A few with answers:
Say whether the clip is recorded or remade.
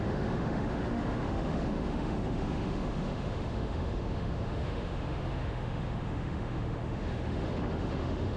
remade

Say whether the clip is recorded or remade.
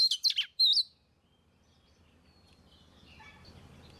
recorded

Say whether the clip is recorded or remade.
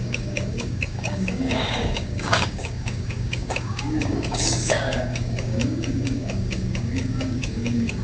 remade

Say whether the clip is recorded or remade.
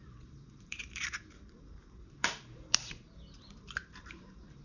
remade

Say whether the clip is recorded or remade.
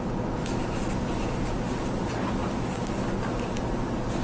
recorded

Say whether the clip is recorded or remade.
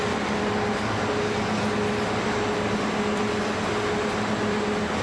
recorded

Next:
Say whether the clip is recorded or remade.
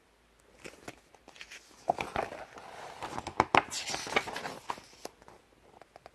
recorded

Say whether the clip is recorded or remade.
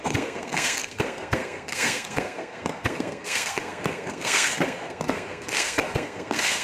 remade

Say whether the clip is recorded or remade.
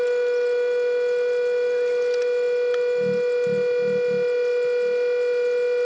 recorded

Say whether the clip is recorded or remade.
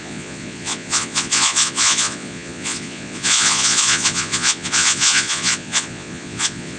remade